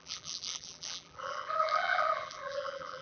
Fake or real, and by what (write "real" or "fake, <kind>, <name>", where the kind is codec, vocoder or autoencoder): fake, vocoder, BigVGAN v2